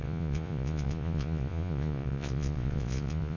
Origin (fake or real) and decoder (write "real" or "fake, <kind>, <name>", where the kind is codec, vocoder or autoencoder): fake, vocoder, Vocos